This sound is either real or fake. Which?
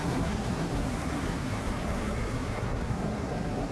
fake